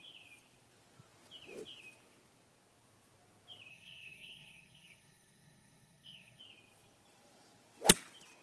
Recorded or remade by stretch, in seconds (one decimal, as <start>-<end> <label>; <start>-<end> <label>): 0.0-3.7 recorded; 3.7-6.4 remade; 6.4-8.4 recorded